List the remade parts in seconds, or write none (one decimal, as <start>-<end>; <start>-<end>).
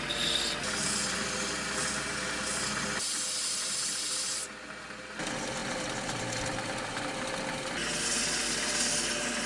none